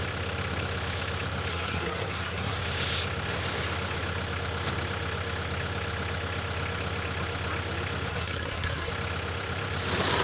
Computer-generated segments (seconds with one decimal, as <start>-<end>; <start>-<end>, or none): 1.5-2.6; 8.1-8.9